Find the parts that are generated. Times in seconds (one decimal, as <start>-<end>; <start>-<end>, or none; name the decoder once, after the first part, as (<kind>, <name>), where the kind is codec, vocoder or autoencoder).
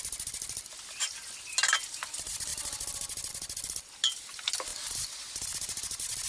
none